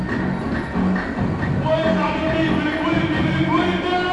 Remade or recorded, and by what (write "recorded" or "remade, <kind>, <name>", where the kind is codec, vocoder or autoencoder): recorded